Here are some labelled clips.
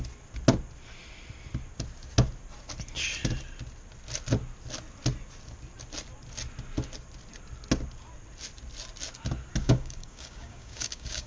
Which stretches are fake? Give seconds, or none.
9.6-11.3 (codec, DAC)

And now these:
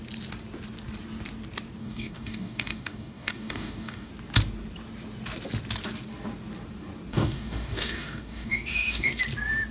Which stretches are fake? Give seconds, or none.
1.8-4.1 (codec, DAC); 7.1-9.2

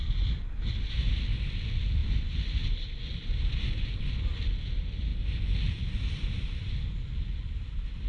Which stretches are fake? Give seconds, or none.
none

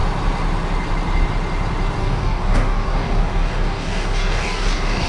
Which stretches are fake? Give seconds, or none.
2.0-5.1 (codec, DAC)

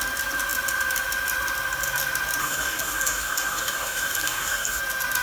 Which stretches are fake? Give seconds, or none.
2.4-4.8 (codec, DAC)

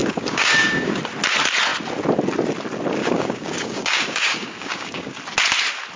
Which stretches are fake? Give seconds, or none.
0.0-1.0 (codec, DAC); 3.0-5.2